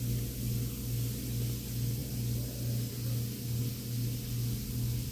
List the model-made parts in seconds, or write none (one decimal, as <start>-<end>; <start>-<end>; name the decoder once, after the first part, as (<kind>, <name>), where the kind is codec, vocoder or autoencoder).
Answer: none